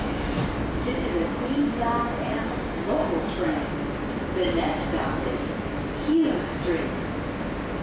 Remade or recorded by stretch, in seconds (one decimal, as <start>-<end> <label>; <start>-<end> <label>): 0.0-0.4 recorded; 0.4-3.7 remade; 3.7-7.8 recorded